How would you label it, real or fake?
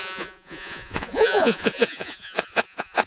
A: fake